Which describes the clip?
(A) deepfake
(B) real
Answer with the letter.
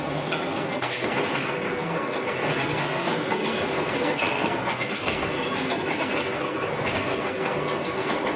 A